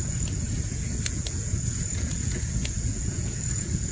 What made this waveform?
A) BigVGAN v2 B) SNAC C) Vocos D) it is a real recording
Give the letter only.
C